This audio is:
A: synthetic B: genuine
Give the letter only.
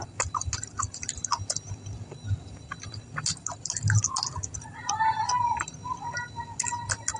B